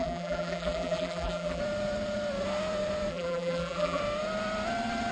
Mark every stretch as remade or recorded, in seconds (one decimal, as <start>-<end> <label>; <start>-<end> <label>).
0.0-1.6 remade; 1.6-3.1 recorded; 3.1-4.0 remade; 4.0-5.1 recorded